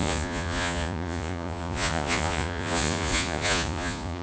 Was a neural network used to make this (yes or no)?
yes